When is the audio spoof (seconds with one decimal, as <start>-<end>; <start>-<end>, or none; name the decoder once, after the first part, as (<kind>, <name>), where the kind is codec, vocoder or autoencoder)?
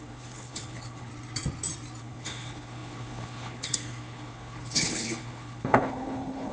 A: 0.0-1.1 (codec, HILCodec); 2.0-6.5